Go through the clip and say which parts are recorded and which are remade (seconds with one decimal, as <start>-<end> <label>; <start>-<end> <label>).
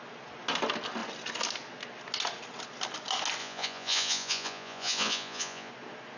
0.0-3.4 recorded; 3.4-5.7 remade; 5.7-6.2 recorded